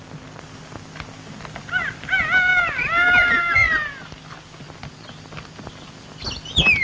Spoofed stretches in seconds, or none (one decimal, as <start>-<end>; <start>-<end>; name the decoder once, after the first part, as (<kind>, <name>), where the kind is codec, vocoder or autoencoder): none